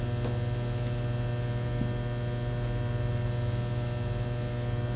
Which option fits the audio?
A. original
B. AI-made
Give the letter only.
A